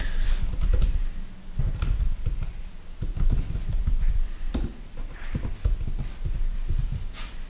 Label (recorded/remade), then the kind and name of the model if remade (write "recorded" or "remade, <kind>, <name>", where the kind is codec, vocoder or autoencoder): remade, vocoder, BigVGAN v2